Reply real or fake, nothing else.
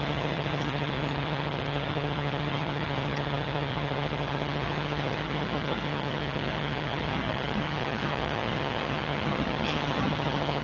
fake